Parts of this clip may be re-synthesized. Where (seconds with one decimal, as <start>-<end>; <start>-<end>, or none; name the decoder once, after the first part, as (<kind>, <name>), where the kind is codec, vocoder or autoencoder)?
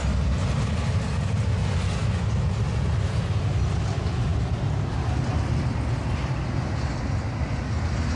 none